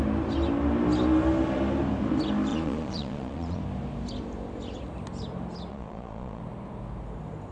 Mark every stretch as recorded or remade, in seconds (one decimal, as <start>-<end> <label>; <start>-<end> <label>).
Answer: 0.0-2.5 recorded; 2.5-3.6 remade; 3.6-5.7 recorded; 5.7-6.4 remade; 6.4-7.5 recorded